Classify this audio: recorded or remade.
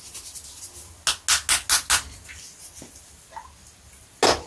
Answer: recorded